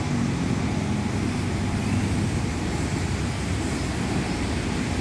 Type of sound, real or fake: real